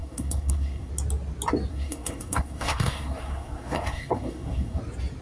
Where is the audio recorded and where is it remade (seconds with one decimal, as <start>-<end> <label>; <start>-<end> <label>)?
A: 0.0-0.9 remade; 0.9-1.7 recorded; 1.7-4.8 remade; 4.8-5.2 recorded